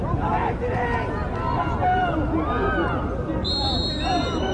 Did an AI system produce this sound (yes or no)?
no